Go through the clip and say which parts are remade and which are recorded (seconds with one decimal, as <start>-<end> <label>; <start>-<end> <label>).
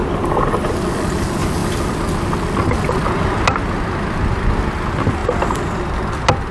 0.0-6.5 recorded